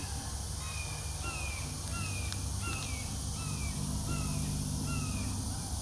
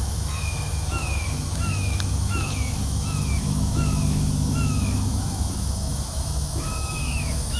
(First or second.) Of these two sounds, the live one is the first